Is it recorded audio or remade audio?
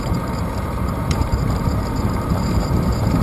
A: remade